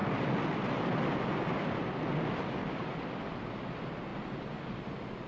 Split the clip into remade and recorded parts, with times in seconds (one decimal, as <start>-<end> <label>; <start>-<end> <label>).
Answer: 0.0-3.2 remade; 3.2-5.3 recorded